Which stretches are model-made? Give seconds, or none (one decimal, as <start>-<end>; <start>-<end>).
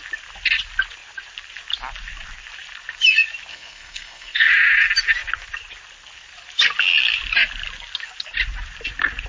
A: 3.5-4.5